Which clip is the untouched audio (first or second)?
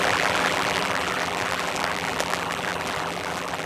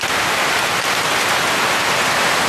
second